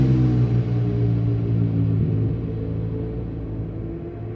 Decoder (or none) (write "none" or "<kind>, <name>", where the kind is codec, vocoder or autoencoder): none